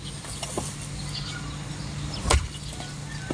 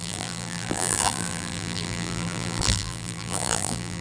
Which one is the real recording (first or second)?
first